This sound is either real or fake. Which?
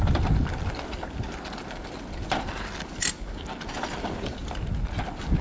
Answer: real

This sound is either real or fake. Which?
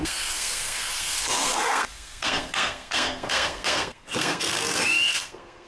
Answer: fake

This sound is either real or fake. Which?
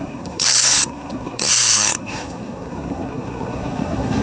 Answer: fake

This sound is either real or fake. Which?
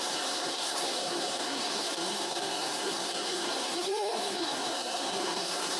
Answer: fake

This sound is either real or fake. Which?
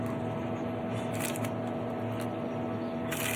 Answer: real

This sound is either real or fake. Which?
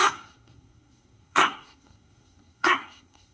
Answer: fake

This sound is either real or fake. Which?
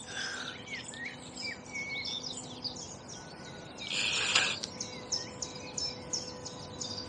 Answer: real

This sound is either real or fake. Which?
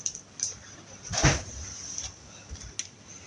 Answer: real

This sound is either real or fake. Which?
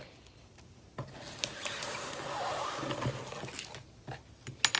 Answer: real